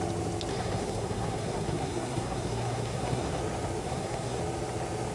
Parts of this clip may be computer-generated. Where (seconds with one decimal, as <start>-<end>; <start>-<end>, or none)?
0.5-3.4; 3.8-4.4